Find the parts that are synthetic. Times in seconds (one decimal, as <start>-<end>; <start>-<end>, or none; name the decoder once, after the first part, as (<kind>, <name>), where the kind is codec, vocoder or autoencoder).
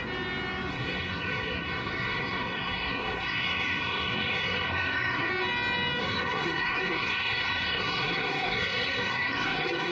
0.7-5.3 (codec, SNAC); 6.0-9.9